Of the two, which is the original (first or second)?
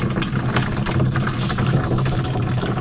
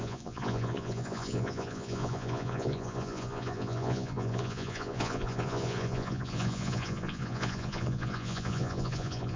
first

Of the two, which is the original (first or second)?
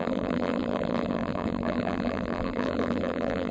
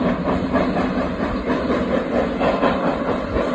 second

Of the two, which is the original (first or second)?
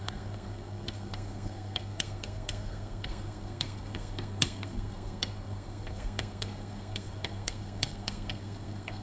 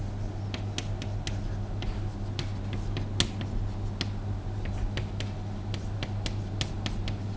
second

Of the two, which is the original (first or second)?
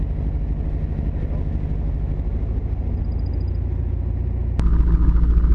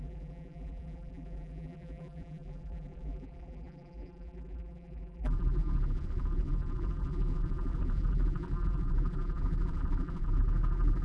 first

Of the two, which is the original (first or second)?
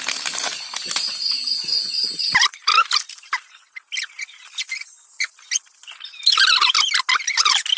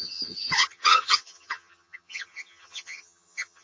first